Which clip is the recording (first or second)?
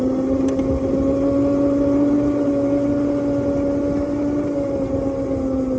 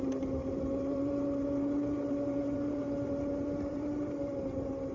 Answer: first